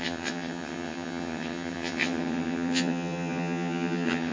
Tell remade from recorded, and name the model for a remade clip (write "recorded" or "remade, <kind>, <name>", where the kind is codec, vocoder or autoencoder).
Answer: remade, vocoder, HiFi-GAN